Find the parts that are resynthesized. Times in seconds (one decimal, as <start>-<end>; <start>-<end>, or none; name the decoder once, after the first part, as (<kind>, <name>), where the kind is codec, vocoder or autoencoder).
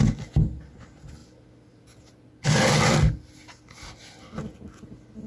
none